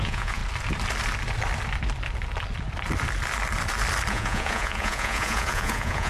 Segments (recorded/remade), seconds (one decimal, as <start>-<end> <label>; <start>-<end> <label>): 0.0-0.4 remade; 0.4-4.1 recorded; 4.1-6.1 remade